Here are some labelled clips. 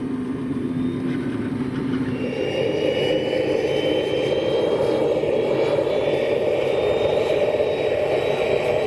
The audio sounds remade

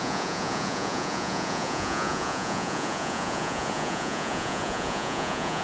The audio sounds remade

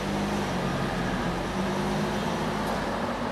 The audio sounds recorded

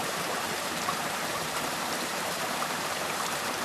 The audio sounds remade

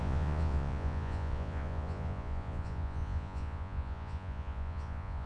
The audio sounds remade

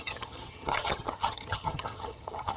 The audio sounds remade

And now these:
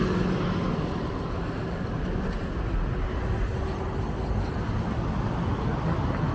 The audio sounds recorded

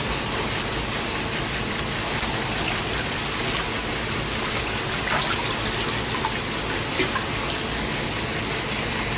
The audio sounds recorded